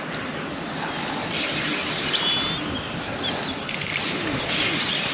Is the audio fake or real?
real